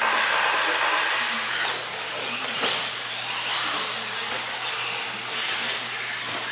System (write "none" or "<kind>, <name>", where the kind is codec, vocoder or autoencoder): none